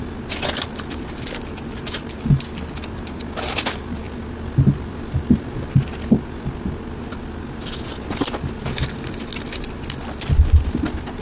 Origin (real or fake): real